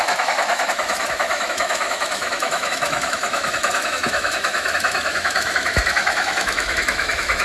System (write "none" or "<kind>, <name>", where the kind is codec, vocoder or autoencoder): autoencoder, DAC-VAE